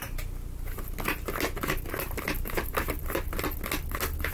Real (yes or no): yes